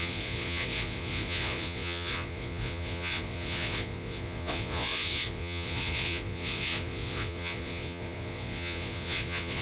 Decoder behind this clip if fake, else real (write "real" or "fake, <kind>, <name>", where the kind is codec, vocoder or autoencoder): fake, vocoder, Vocos